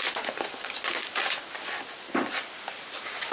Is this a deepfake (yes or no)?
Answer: yes